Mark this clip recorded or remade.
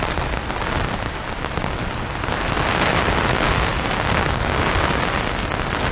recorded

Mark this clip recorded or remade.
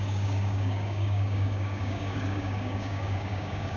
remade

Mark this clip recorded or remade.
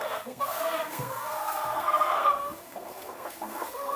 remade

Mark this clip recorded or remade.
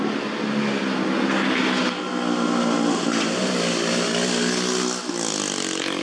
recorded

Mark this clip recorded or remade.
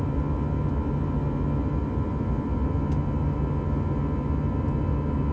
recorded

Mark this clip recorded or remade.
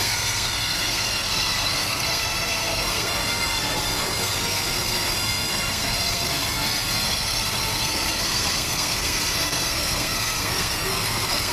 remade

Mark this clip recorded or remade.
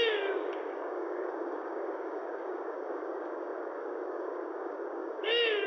remade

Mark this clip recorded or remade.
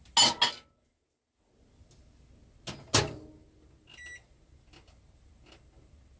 recorded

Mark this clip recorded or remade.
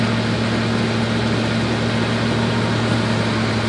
recorded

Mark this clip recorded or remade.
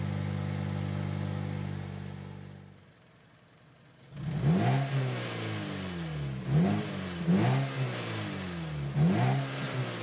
recorded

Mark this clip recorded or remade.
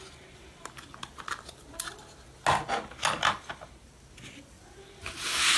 recorded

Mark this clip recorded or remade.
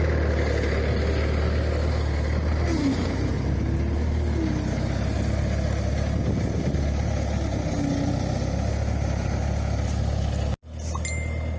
recorded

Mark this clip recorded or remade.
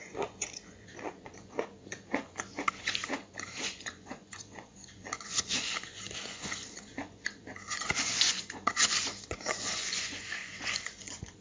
remade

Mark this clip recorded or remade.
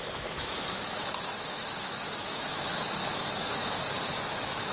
remade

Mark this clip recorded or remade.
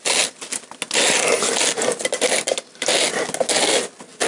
recorded